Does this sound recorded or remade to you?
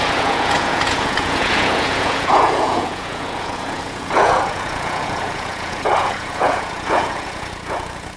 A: remade